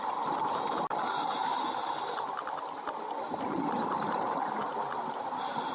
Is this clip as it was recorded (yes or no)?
yes